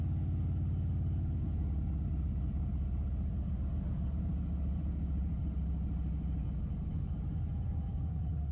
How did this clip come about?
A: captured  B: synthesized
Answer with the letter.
A